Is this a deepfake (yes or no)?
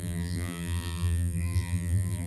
yes